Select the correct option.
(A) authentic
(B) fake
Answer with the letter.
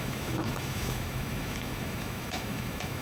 B